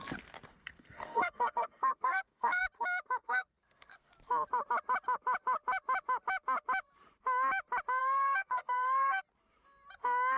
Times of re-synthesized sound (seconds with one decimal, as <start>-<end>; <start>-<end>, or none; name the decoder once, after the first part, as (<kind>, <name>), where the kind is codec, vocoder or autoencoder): 0.5-2.6 (codec, SNAC); 3.2-4.1; 8.0-9.2